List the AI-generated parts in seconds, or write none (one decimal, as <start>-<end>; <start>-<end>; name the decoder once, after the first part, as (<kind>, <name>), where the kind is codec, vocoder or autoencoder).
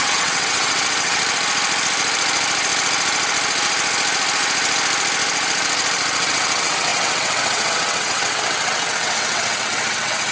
0.0-1.2 (vocoder, WaveNeXt); 6.2-10.3